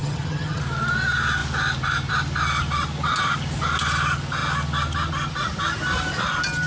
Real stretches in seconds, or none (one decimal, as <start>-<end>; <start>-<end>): 0.6-6.7